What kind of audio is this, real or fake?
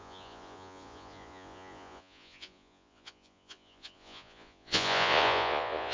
fake